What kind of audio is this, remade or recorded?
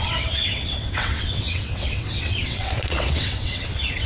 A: remade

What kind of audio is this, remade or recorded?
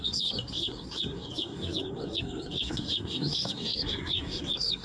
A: remade